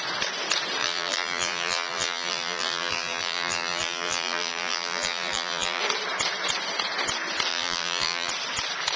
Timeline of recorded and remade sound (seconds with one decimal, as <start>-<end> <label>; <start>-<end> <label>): 0.0-0.8 recorded; 0.8-5.8 remade; 5.8-7.5 recorded; 7.5-8.3 remade; 8.3-9.0 recorded